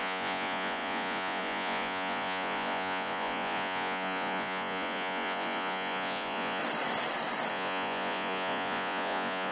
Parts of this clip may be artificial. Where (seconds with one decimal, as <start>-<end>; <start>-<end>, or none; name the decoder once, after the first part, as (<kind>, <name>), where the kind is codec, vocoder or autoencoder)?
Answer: 0.0-6.6 (vocoder, Vocos); 7.5-9.5